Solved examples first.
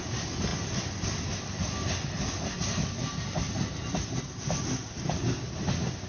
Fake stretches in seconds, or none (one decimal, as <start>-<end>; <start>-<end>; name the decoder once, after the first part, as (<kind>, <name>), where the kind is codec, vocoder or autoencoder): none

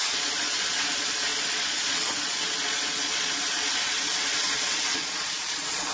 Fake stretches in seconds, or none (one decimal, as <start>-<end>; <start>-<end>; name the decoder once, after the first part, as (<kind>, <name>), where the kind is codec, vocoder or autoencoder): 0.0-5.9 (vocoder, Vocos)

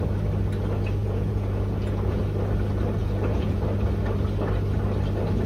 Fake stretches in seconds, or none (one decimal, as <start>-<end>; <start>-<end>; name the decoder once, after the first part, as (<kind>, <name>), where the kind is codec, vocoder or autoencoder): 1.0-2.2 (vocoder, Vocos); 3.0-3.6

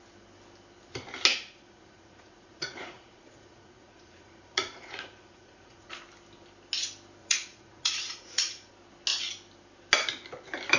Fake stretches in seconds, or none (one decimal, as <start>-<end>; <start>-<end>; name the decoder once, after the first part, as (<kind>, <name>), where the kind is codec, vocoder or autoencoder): 1.3-5.9 (vocoder, Vocos); 7.2-8.7

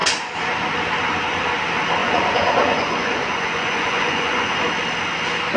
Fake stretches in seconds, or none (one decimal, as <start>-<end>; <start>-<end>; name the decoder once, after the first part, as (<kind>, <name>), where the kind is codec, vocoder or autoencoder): 2.0-4.5 (vocoder, Vocos)

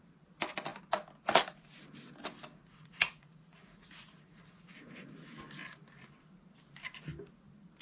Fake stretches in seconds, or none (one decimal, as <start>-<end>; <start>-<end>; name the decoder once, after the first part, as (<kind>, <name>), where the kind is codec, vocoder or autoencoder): 2.5-5.1 (vocoder, Vocos)

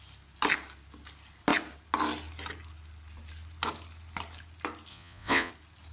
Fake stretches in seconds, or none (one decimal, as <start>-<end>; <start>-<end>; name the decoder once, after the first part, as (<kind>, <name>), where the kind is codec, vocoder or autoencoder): 4.9-5.5 (vocoder, Vocos)

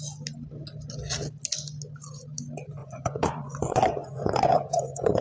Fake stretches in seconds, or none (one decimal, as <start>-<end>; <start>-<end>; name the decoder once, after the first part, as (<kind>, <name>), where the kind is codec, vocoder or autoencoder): 2.8-5.2 (vocoder, Vocos)